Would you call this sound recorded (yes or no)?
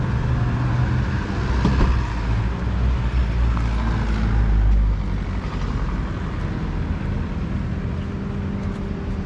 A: yes